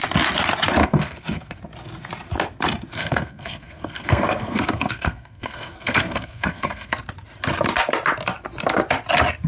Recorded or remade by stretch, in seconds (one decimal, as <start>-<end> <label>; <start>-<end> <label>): 0.0-0.8 recorded; 0.8-1.6 remade; 1.6-2.9 recorded; 2.9-6.9 remade; 6.9-9.5 recorded